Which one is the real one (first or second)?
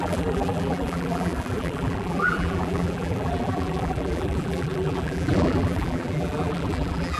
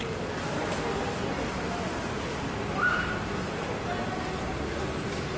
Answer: second